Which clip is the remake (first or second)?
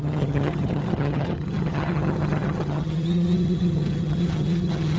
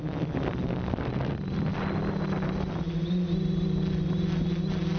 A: first